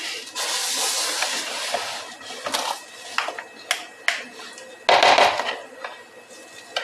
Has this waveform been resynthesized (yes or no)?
no